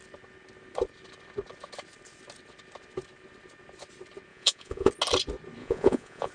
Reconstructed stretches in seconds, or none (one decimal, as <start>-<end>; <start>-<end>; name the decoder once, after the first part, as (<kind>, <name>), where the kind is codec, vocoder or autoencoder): 4.3-4.9 (vocoder, Vocos); 5.6-6.3